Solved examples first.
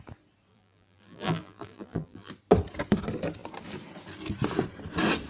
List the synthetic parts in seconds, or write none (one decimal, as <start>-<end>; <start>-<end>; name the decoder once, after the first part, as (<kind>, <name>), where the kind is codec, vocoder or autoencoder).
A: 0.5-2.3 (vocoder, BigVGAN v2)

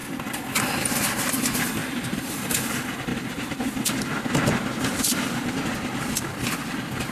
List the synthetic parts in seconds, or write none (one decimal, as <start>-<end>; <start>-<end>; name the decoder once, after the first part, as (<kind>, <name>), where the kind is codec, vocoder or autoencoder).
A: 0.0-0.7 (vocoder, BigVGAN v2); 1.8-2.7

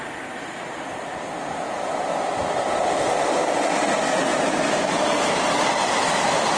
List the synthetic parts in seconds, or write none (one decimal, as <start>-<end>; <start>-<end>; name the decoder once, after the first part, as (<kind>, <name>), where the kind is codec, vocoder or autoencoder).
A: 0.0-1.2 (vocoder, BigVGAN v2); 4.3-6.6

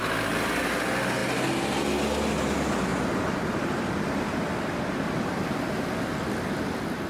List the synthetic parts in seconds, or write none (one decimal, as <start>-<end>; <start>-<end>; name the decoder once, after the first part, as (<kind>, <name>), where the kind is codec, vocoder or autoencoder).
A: none

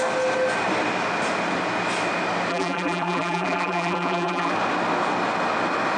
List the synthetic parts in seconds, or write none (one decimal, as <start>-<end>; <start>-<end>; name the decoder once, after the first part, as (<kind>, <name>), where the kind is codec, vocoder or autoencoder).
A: 2.5-4.5 (vocoder, BigVGAN v2)

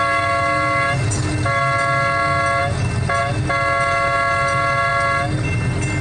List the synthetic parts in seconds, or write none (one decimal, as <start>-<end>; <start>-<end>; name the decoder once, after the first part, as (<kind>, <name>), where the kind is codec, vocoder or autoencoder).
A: none